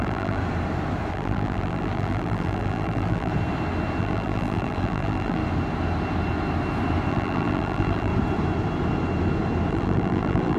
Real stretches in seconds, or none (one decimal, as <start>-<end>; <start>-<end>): 0.4-1.1; 3.3-4.0; 5.4-7.1; 8.1-9.7